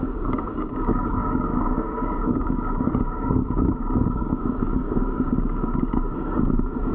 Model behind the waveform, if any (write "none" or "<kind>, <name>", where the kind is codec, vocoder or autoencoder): codec, DAC